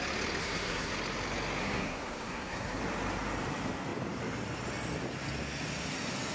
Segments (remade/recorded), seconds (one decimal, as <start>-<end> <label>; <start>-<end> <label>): 0.0-0.4 recorded; 0.4-0.9 remade; 0.9-1.6 recorded; 1.6-2.8 remade; 2.8-6.3 recorded